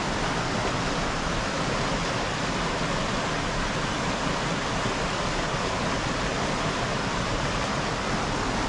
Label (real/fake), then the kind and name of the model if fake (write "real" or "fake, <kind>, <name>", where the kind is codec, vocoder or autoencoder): real